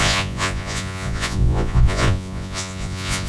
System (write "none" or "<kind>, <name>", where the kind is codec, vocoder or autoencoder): vocoder, Vocos